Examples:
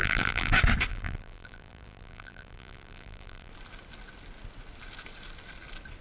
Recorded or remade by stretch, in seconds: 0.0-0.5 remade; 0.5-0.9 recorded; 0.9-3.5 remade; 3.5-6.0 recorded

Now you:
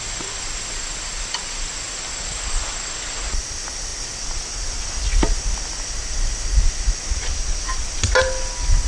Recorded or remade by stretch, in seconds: 0.0-8.9 recorded

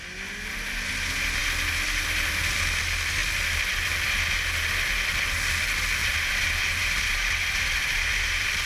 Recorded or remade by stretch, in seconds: 0.0-3.2 recorded; 3.2-4.1 remade; 4.1-6.0 recorded; 6.0-8.7 remade

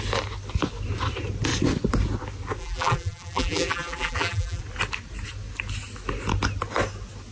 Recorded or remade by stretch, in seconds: 0.0-2.6 recorded; 2.6-4.6 remade; 4.6-7.3 recorded